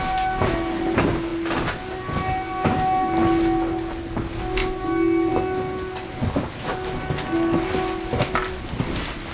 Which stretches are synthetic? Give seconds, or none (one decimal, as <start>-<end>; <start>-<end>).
none